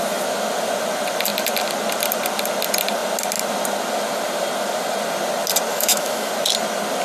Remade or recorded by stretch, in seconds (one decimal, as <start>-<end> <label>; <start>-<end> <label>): 0.0-5.7 recorded; 5.7-6.3 remade; 6.3-7.0 recorded